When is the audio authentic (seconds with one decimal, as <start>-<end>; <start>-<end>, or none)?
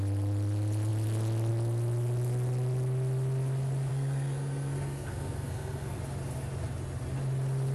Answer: 0.0-3.9; 6.0-7.7